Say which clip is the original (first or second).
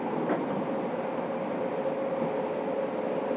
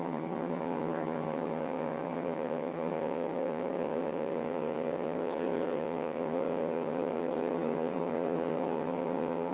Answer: first